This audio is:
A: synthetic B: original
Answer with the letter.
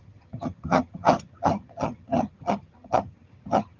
A